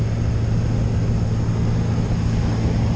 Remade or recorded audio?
recorded